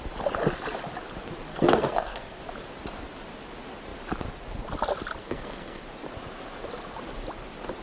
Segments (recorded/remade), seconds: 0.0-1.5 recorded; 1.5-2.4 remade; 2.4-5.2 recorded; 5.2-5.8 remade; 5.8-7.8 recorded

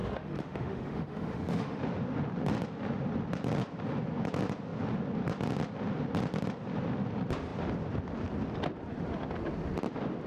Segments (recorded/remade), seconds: 0.0-1.8 remade; 1.8-10.3 recorded